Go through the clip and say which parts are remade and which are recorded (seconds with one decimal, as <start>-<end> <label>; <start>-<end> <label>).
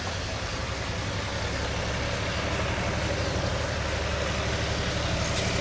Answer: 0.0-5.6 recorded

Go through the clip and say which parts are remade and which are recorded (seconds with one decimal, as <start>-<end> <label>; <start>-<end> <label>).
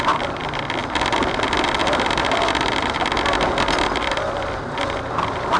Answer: 0.0-5.6 recorded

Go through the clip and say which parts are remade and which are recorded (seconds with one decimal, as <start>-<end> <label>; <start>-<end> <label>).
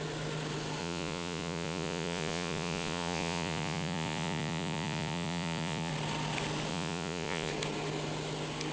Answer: 0.0-0.8 recorded; 0.8-5.9 remade; 5.9-6.7 recorded; 6.7-7.5 remade; 7.5-8.7 recorded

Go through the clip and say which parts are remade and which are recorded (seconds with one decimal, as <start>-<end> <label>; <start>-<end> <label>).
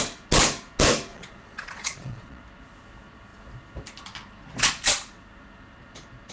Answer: 0.0-1.1 recorded; 1.1-2.4 remade; 2.4-6.3 recorded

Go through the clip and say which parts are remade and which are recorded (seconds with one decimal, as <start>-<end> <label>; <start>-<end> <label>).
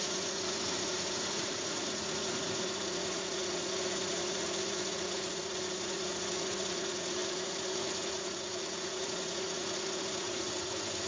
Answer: 0.0-11.1 remade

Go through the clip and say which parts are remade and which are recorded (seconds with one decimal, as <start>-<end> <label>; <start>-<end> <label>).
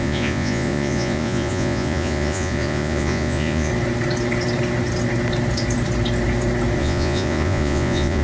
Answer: 0.0-3.7 remade; 3.7-6.8 recorded; 6.8-8.2 remade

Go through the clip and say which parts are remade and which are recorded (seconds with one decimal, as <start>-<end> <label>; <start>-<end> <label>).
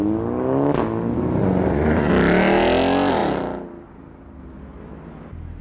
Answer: 0.0-1.4 recorded; 1.4-2.1 remade; 2.1-5.6 recorded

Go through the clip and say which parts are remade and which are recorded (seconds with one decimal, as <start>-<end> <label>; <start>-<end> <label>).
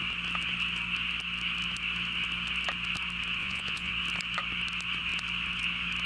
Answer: 0.0-3.4 recorded; 3.4-3.9 remade; 3.9-6.1 recorded